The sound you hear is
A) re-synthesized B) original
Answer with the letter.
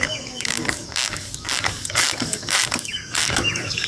A